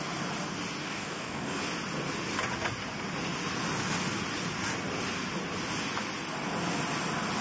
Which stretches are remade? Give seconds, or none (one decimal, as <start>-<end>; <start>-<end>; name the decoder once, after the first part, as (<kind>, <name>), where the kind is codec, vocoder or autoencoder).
0.8-1.6 (codec, DAC)